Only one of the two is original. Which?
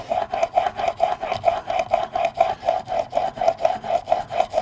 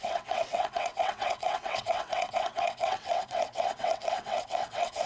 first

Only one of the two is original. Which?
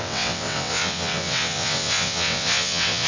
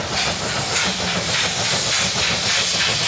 second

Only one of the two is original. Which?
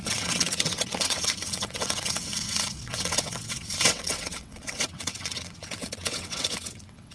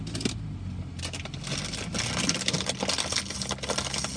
second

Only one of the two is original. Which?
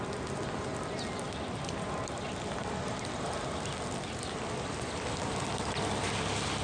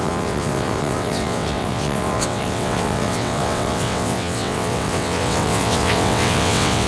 first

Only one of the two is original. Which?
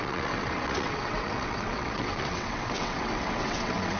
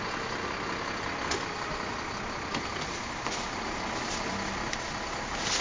second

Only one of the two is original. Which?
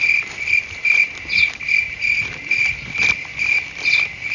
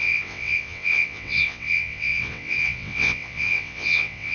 first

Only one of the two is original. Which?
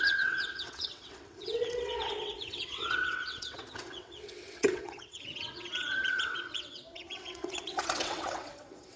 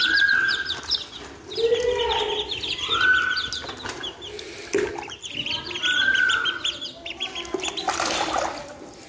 second